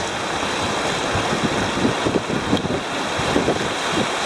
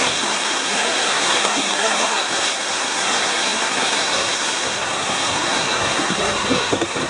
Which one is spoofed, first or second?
second